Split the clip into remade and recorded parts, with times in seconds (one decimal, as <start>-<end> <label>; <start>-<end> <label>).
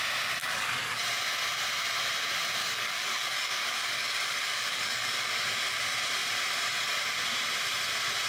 0.0-0.4 recorded; 0.4-1.0 remade; 1.0-2.6 recorded; 2.6-5.3 remade; 5.3-8.3 recorded